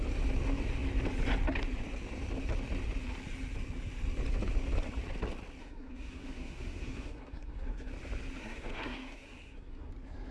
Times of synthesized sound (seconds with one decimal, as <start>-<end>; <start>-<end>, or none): 5.6-7.9; 8.4-9.9